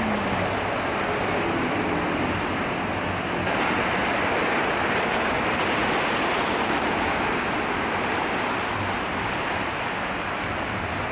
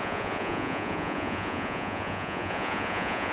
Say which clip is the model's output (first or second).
second